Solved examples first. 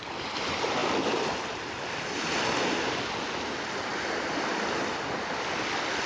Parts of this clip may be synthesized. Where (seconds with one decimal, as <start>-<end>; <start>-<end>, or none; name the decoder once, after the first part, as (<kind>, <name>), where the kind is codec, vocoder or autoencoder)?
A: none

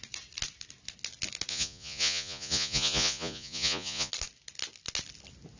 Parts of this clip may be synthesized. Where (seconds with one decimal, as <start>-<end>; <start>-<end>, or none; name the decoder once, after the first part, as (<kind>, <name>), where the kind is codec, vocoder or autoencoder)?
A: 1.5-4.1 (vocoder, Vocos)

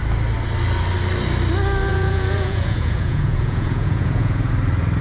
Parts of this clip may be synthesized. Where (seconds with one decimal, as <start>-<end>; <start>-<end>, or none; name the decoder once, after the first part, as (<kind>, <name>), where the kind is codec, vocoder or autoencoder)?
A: 1.9-4.5 (vocoder, Vocos)